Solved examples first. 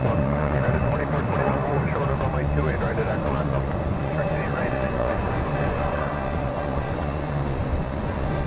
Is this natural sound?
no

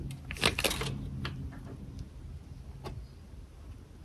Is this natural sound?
yes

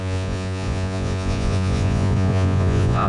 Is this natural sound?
no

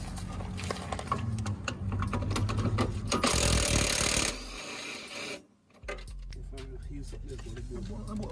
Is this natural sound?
yes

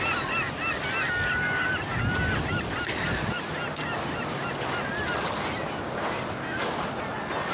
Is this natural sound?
yes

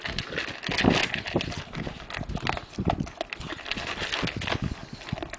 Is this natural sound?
yes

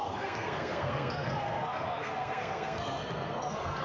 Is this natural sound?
no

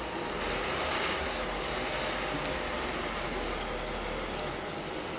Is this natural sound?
yes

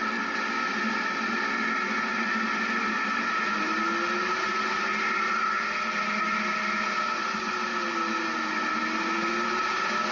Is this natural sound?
yes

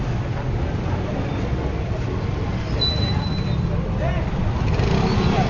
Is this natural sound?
yes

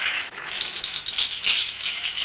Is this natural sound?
no